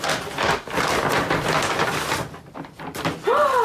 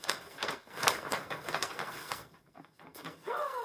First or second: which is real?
first